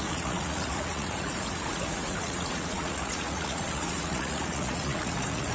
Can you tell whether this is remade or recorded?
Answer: remade